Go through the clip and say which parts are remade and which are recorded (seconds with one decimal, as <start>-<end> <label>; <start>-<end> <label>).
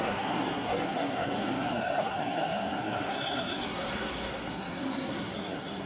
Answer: 0.0-5.9 remade